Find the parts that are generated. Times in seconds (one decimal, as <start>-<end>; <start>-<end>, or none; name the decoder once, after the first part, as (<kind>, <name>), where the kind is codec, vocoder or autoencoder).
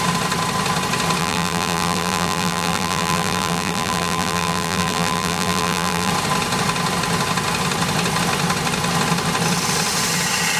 1.2-6.1 (vocoder, BigVGAN v2)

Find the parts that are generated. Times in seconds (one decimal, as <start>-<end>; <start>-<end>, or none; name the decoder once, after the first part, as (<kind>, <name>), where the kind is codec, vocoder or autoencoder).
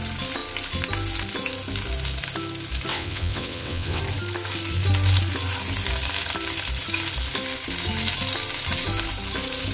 2.9-4.0 (vocoder, WaveNeXt)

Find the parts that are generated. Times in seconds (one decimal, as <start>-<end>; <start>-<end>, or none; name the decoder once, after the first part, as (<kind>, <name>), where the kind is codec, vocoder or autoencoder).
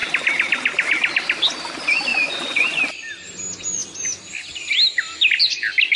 2.1-2.8 (vocoder, Vocos)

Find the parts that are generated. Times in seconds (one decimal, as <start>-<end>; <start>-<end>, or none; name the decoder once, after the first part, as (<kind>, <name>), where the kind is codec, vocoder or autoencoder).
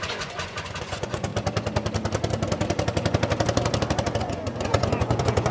0.0-1.3 (vocoder, Vocos); 4.2-5.5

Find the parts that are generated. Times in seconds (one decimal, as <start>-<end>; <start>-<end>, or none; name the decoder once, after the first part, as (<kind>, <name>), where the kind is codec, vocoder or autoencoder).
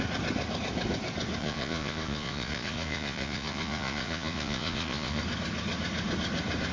1.4-5.2 (vocoder, Vocos)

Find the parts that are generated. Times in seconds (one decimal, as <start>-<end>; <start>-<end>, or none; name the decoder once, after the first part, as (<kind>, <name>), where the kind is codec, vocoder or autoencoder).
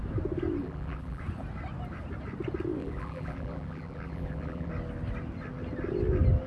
0.6-1.2 (vocoder, BigVGAN v2); 2.8-4.7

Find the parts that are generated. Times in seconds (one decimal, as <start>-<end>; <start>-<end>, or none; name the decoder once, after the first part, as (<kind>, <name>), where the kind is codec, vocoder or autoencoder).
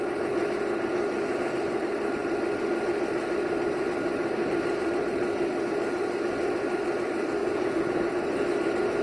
7.4-8.0 (vocoder, Vocos)